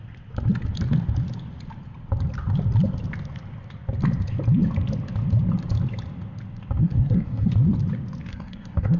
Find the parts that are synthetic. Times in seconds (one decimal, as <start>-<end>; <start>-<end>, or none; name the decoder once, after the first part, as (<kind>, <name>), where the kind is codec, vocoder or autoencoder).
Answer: 6.8-7.5 (codec, SNAC); 8.3-9.0